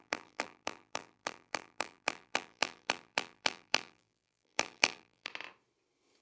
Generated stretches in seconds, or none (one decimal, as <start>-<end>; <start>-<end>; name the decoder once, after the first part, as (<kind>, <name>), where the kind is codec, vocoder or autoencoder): 0.0-5.3 (vocoder, BigVGAN v2)